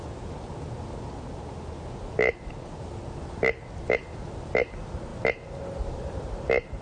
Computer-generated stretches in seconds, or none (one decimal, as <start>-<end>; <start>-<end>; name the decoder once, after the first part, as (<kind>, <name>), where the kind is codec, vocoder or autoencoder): none